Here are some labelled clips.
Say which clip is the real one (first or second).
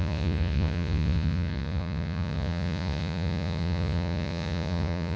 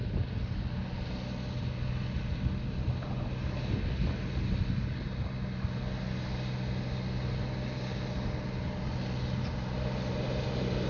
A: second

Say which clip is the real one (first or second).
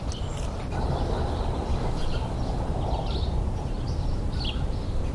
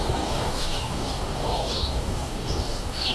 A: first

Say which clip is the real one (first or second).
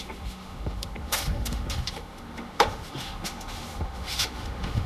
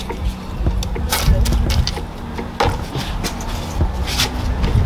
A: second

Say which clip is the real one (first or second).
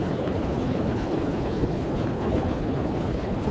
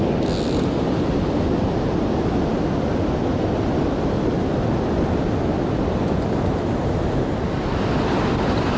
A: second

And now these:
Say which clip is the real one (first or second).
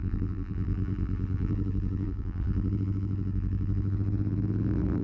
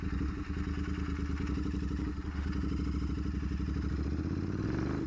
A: second